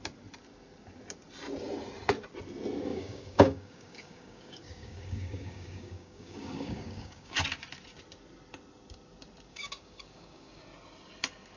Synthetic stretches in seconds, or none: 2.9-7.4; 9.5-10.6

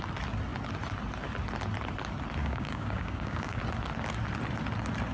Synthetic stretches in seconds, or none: 2.4-3.6

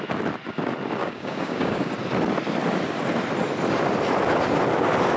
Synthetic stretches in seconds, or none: 1.0-1.9

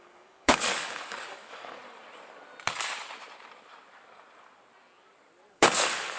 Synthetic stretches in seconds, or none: 0.0-1.8; 5.5-6.2

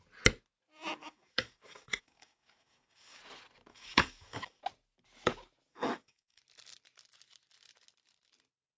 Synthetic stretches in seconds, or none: 1.0-3.2; 3.7-4.6; 5.7-6.4

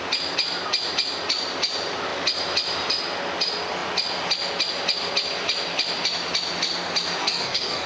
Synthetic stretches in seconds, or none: 7.2-7.9

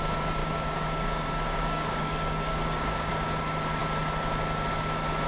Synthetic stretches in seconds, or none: 0.4-3.1